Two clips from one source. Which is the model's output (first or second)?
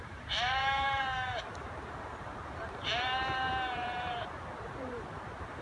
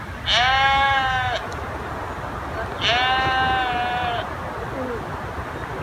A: first